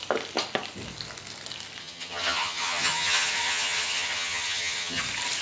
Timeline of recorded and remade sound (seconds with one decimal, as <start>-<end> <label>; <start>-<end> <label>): 0.0-1.8 recorded; 1.8-5.0 remade; 5.0-5.4 recorded